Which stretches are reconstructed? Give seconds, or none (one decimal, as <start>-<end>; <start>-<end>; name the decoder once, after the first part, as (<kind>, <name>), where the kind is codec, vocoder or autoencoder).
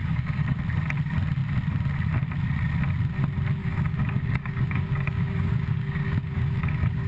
0.0-0.6 (codec, DAC); 3.6-7.1